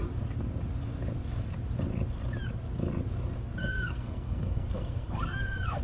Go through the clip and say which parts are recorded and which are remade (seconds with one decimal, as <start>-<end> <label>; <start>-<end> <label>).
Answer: 0.0-3.6 recorded; 3.6-5.8 remade